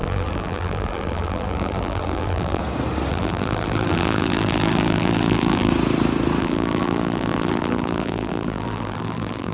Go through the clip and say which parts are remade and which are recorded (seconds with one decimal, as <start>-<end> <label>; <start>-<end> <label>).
0.0-2.6 remade; 2.6-3.1 recorded; 3.1-5.7 remade; 5.7-6.4 recorded; 6.4-9.5 remade